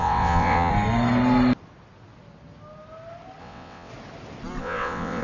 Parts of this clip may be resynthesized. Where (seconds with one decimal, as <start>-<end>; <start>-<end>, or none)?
0.0-0.7; 3.4-3.9; 4.6-5.2